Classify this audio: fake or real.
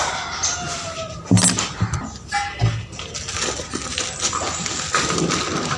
real